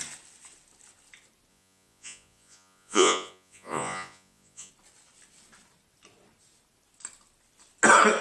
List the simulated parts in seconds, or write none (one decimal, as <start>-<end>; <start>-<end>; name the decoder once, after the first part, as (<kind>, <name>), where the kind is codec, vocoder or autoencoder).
1.5-4.7 (vocoder, Vocos)